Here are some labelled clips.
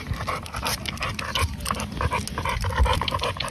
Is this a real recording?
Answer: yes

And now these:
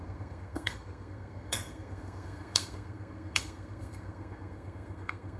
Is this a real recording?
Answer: no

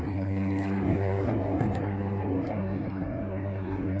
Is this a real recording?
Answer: no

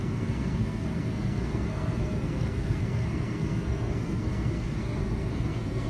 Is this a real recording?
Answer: no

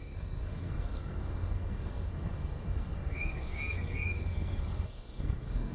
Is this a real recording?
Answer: no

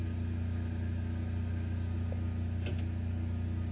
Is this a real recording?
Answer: yes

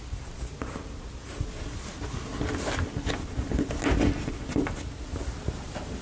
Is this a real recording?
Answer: yes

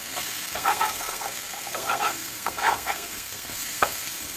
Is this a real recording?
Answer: no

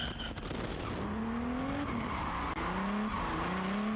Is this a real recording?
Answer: yes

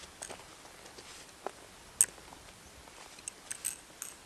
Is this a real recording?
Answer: yes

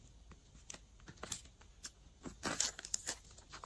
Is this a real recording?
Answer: yes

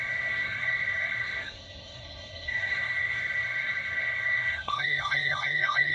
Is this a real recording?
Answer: no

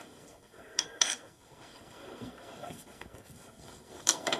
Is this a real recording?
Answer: no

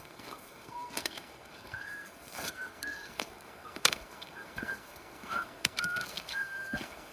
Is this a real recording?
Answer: no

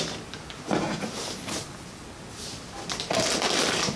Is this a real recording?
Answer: yes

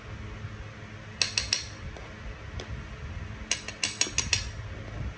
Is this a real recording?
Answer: yes